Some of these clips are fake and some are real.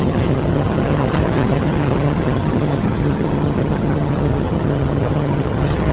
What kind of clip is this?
fake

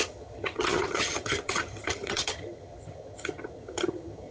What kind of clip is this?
fake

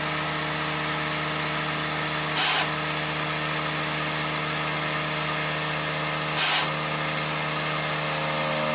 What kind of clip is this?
real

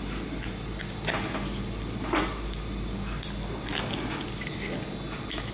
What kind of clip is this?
real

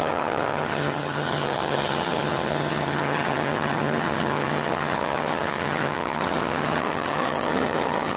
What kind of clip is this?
fake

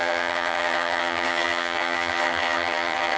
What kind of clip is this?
fake